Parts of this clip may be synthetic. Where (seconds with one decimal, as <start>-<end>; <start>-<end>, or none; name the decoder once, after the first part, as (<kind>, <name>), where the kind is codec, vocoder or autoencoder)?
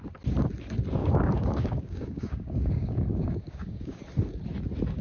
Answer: 1.0-4.0 (codec, DAC)